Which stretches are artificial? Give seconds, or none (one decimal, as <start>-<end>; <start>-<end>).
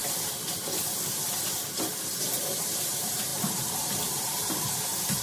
2.6-5.2